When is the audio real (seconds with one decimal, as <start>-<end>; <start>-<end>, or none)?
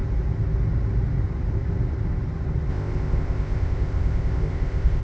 0.0-2.7